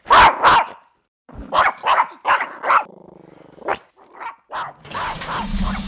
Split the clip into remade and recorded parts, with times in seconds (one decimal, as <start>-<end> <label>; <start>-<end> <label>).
0.0-0.5 recorded; 0.5-2.7 remade; 2.7-3.7 recorded; 3.7-4.3 remade; 4.3-5.9 recorded